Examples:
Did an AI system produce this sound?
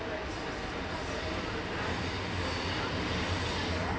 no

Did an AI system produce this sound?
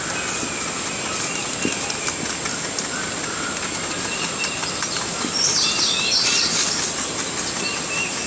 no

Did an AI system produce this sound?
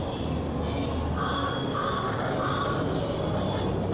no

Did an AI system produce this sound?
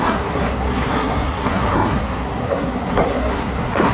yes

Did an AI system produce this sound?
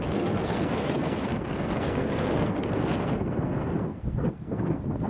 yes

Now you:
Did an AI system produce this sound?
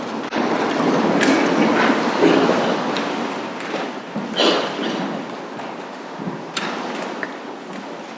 no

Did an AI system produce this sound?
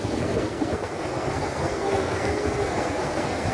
yes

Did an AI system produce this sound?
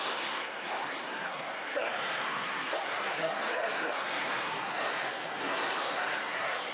yes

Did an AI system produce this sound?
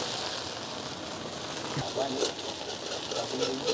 no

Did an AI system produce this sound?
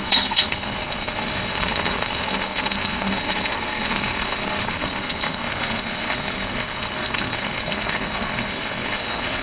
yes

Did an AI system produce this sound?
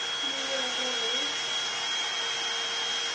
no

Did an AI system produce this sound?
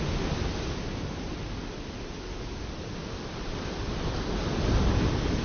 no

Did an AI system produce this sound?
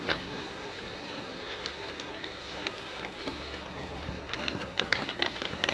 yes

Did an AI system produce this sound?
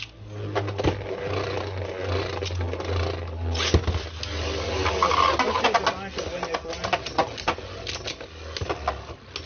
no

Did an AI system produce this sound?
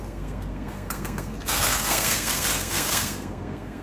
yes